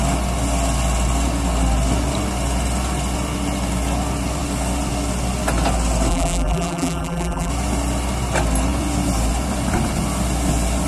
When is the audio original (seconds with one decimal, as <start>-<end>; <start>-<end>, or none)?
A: 0.0-6.1; 7.5-10.9